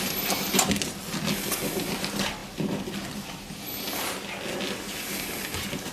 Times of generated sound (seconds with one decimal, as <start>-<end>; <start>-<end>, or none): none